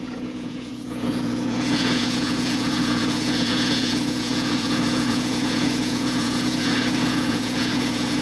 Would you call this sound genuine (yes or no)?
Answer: no